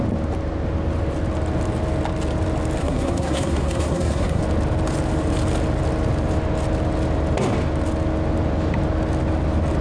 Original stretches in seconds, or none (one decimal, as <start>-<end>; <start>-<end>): 0.0-2.8; 4.4-9.8